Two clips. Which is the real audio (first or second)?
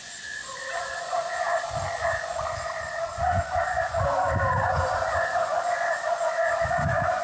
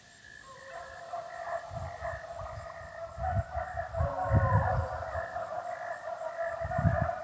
second